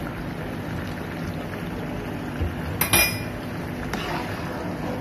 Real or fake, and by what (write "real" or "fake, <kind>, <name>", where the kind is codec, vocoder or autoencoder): real